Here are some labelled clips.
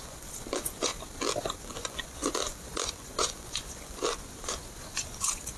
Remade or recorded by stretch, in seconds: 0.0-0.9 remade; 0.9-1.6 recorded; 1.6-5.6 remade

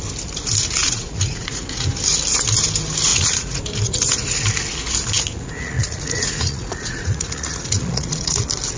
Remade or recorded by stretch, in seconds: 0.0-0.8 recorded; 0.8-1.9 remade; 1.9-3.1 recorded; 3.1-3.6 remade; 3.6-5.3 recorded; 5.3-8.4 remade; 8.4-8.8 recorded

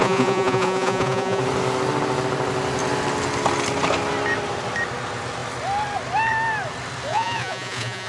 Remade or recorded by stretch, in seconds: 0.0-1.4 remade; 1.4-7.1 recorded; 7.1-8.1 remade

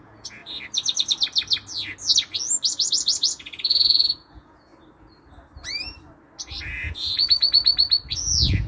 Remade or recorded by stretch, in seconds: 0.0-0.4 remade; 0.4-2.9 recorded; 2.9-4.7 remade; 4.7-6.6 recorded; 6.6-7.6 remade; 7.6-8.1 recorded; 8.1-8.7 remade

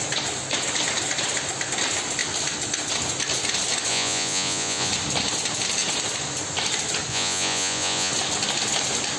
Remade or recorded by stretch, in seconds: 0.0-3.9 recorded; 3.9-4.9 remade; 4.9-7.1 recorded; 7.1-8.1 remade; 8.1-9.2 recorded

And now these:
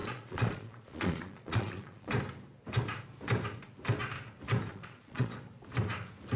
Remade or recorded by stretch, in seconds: 0.0-2.1 remade; 2.1-4.7 recorded; 4.7-5.3 remade; 5.3-6.4 recorded

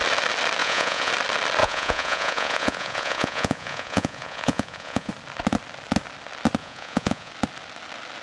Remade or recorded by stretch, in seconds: 0.0-0.6 recorded; 0.6-1.1 remade; 1.1-1.6 recorded; 1.6-5.1 remade; 5.1-6.6 recorded; 6.6-7.3 remade; 7.3-8.2 recorded

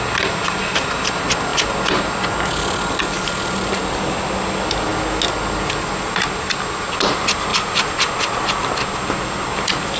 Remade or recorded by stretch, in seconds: 0.0-10.0 recorded